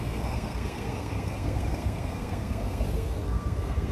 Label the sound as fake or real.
fake